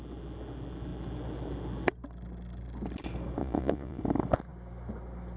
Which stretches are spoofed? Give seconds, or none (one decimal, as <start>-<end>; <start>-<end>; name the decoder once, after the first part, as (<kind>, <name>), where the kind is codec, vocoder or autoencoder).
3.4-4.0 (vocoder, Vocos)